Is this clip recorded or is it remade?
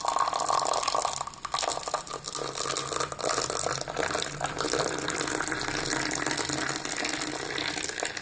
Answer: recorded